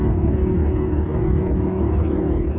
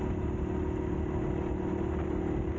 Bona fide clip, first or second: second